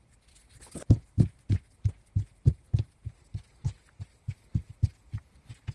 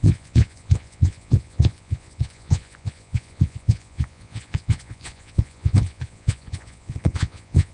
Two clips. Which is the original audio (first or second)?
first